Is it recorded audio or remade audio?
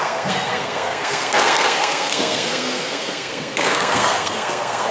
remade